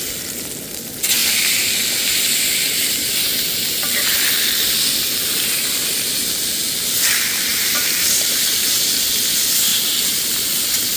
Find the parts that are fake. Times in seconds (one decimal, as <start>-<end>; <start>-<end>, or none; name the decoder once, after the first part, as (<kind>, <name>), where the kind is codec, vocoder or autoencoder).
7.5-8.8 (vocoder, BigVGAN v2); 9.7-10.6